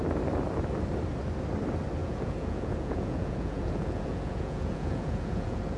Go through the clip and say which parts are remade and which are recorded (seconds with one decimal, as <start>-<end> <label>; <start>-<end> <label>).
0.0-2.0 recorded; 2.0-5.8 remade

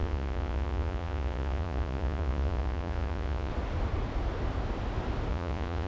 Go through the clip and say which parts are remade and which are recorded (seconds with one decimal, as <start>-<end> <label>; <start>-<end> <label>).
0.0-3.5 remade; 3.5-5.3 recorded; 5.3-5.9 remade

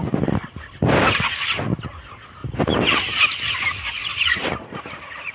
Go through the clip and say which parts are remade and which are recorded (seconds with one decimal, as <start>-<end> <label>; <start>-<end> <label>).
0.0-4.1 recorded; 4.1-5.3 remade

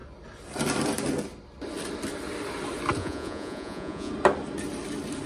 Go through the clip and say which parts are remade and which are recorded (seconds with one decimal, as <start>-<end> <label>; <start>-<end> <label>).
0.0-3.0 recorded; 3.0-4.1 remade; 4.1-5.3 recorded

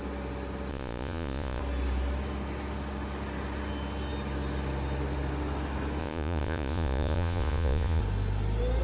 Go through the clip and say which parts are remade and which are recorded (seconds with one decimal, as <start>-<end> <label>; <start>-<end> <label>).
0.0-0.7 recorded; 0.7-1.6 remade; 1.6-6.0 recorded; 6.0-8.0 remade; 8.0-8.8 recorded

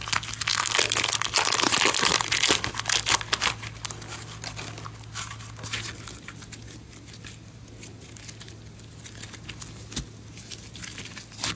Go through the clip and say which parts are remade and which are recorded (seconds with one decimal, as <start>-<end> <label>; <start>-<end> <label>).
0.0-11.6 recorded

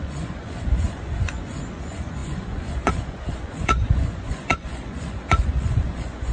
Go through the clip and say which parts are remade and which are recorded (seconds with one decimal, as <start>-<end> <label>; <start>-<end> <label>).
0.0-6.3 remade

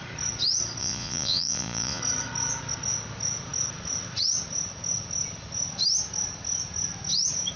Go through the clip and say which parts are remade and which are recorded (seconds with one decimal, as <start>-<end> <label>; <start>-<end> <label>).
0.0-0.8 recorded; 0.8-2.0 remade; 2.0-7.6 recorded